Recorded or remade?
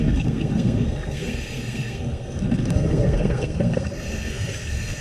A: remade